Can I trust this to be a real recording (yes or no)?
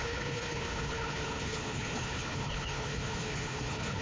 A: no